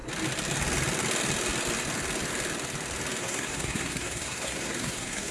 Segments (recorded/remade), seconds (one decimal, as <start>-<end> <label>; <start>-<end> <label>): 0.0-3.2 recorded; 3.2-5.3 remade